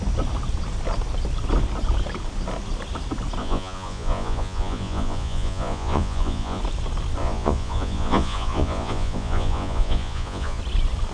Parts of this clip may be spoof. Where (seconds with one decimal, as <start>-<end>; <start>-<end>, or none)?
3.4-6.6; 7.2-10.6